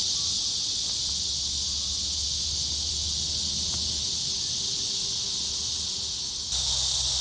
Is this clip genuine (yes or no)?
yes